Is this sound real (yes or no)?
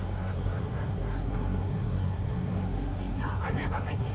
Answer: no